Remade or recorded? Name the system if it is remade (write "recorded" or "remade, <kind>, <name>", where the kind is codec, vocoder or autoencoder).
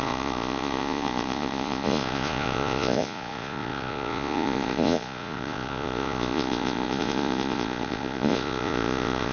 remade, vocoder, Vocos